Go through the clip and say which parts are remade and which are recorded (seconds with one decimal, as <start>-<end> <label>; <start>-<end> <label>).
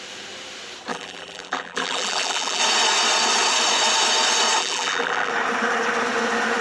0.0-0.9 recorded; 0.9-2.6 remade; 2.6-4.6 recorded; 4.6-5.3 remade; 5.3-6.6 recorded